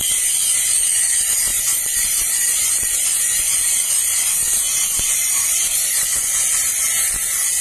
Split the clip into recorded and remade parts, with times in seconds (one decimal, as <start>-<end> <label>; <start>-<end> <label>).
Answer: 0.0-6.7 remade; 6.7-7.6 recorded